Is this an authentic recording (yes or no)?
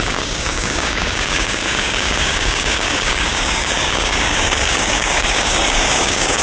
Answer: no